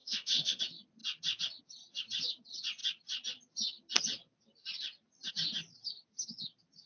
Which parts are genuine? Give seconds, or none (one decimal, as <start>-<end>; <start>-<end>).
0.6-6.9